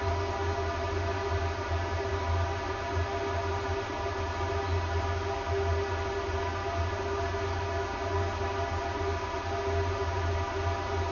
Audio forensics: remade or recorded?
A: recorded